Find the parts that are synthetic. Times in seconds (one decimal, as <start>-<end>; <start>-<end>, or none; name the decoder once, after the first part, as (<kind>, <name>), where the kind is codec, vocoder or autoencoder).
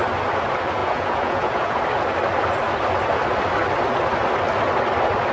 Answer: 0.8-1.8 (vocoder, Vocos)